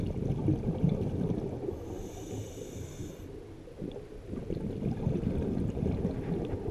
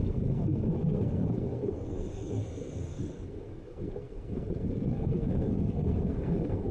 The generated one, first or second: second